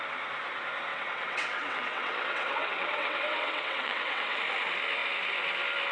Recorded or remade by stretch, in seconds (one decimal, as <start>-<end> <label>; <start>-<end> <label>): 0.0-0.9 recorded; 0.9-4.4 remade; 4.4-5.9 recorded